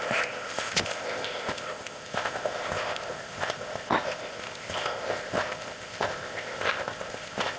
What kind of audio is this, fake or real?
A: fake